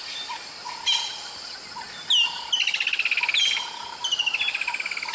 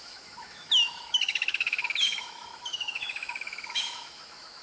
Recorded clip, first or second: first